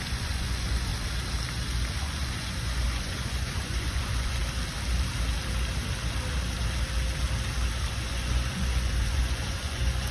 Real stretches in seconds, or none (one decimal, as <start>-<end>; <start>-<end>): 0.9-2.0; 4.4-7.9